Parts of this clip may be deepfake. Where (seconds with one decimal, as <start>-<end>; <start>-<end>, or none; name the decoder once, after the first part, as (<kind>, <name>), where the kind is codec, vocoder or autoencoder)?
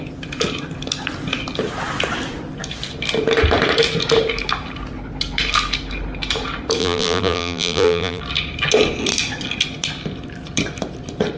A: 6.8-8.2 (vocoder, BigVGAN v2)